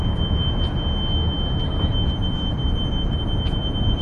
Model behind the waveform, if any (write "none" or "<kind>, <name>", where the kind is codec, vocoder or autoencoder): none